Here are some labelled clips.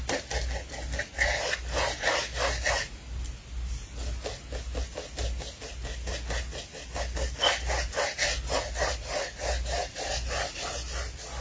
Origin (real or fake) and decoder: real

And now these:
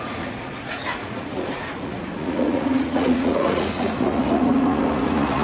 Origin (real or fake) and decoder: fake, vocoder, Vocos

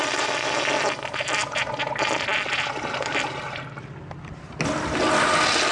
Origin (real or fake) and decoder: real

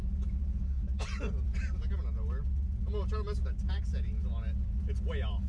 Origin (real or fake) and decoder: real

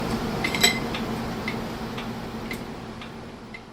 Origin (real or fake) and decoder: fake, vocoder, BigVGAN v2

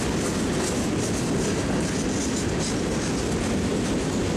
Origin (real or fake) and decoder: real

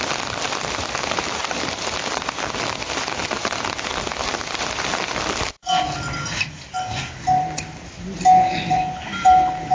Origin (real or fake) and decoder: fake, vocoder, BigVGAN v2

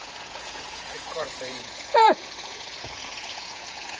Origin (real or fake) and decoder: fake, vocoder, Vocos